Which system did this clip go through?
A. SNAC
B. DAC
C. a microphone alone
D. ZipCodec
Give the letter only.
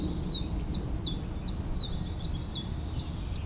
C